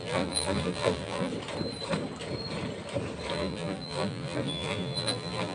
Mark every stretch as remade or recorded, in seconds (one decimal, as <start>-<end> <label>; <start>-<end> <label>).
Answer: 0.0-1.3 remade; 1.3-3.3 recorded; 3.3-5.5 remade

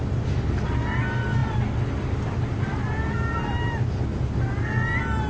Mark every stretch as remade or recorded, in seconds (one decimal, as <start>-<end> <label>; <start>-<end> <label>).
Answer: 0.0-5.3 recorded

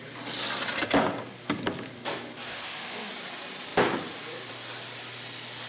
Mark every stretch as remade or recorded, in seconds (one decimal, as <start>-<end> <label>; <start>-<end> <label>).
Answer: 0.0-2.5 recorded; 2.5-3.1 remade; 3.1-5.7 recorded

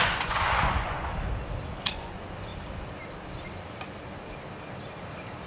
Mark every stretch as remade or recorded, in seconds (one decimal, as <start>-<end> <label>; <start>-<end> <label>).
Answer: 0.0-1.1 remade; 1.1-1.8 recorded; 1.8-2.5 remade; 2.5-5.5 recorded

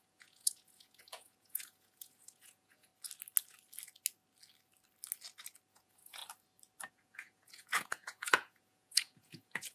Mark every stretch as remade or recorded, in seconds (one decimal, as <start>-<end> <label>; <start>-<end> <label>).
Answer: 0.0-2.9 remade; 2.9-5.7 recorded; 5.7-6.2 remade; 6.2-6.9 recorded; 6.9-9.7 remade

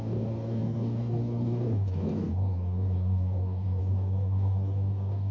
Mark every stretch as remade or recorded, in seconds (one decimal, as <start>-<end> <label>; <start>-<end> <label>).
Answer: 0.0-5.3 remade